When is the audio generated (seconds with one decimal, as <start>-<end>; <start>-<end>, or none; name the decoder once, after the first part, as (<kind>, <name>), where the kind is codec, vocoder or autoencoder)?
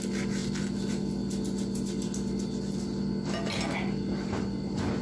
none